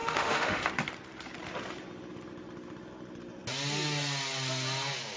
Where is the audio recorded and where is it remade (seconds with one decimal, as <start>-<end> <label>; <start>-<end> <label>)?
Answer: 0.0-0.7 remade; 0.7-5.2 recorded